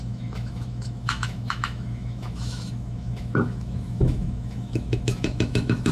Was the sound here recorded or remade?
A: remade